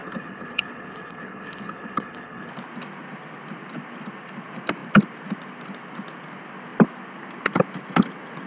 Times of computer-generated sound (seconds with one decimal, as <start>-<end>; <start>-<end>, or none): 0.0-2.5